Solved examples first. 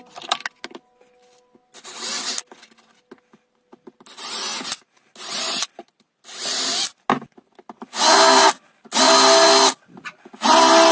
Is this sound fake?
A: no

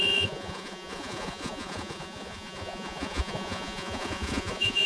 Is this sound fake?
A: yes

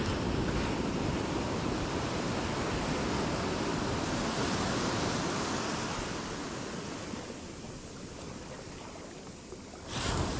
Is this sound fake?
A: no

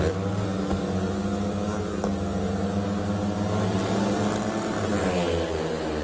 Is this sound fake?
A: no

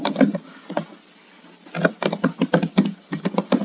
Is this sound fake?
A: no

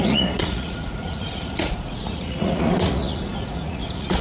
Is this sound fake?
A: yes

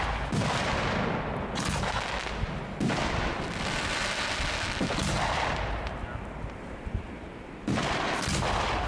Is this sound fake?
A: no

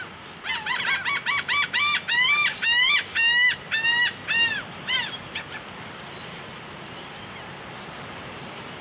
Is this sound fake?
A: no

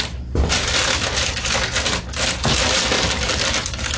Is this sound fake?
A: no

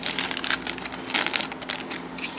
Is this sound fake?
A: no